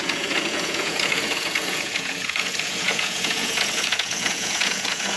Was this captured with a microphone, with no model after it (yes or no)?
no